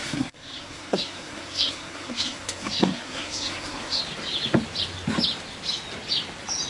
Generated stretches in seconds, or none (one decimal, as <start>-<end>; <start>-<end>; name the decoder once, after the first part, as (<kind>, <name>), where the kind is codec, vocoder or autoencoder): 0.0-4.0 (codec, SNAC)